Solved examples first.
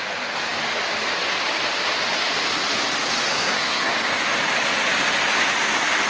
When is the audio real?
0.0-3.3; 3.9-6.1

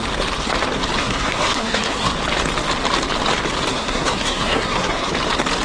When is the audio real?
0.0-1.0; 2.1-3.7; 5.1-5.6

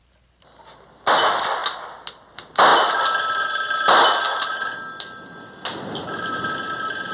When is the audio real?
0.0-7.1

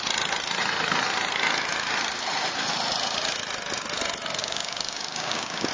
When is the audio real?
0.0-4.4